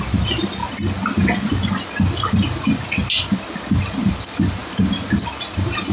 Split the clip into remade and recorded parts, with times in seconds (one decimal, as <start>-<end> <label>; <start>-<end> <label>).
0.0-0.6 remade; 0.6-4.1 recorded; 4.1-4.6 remade; 4.6-5.4 recorded; 5.4-5.9 remade

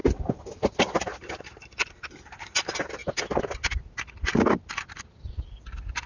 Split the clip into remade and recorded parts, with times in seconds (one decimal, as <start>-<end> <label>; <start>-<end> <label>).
0.0-6.1 recorded

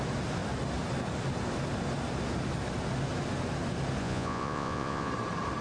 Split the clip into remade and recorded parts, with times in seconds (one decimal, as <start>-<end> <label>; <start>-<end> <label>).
0.0-4.0 recorded; 4.0-5.1 remade; 5.1-5.6 recorded

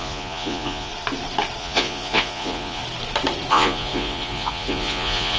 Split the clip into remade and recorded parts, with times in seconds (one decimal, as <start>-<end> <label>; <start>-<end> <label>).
0.0-0.9 remade; 0.9-1.6 recorded; 1.6-2.8 remade; 2.8-3.5 recorded; 3.5-5.4 remade